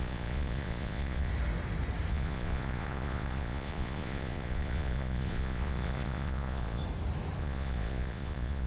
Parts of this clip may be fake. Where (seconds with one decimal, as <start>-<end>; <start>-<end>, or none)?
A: 0.0-1.3; 2.1-6.8; 7.4-8.7